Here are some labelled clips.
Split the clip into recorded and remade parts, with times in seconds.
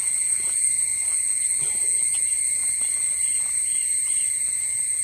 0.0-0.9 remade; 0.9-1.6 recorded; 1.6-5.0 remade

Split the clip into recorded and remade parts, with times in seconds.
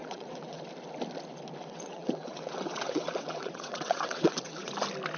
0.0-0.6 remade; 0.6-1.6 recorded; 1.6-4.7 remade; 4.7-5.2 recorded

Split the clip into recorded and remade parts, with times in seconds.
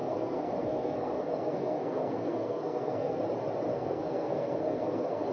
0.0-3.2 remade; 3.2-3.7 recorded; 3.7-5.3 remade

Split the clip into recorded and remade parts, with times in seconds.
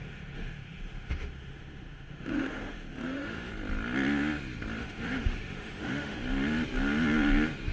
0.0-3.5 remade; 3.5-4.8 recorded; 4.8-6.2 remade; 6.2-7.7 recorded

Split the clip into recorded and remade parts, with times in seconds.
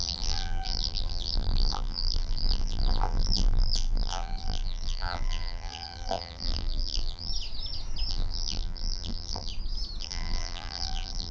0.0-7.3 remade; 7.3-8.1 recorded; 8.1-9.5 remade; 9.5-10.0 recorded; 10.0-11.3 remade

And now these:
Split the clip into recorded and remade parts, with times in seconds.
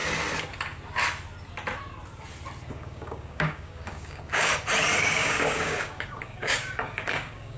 0.0-2.7 recorded; 2.7-4.5 remade; 4.5-5.0 recorded; 5.0-7.6 remade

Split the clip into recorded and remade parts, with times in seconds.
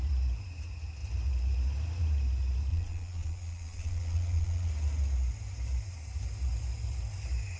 0.0-2.7 recorded; 2.7-4.7 remade; 4.7-7.6 recorded